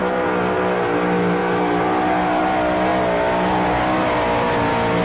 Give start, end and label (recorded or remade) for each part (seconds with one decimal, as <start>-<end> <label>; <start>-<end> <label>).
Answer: 0.0-5.0 recorded